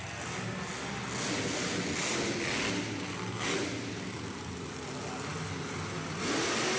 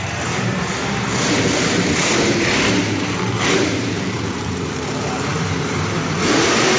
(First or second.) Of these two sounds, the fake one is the second